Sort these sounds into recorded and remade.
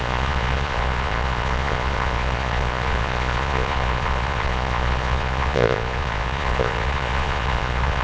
remade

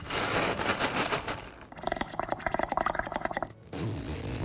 recorded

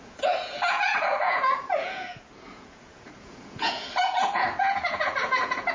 remade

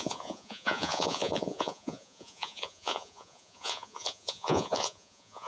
remade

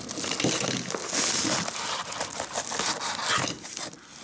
recorded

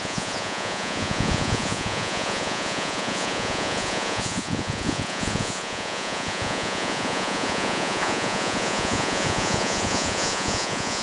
remade